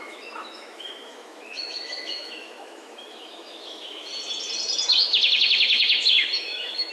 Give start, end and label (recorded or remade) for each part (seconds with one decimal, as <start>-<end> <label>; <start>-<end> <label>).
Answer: 0.0-4.1 remade; 4.1-5.0 recorded; 5.0-6.9 remade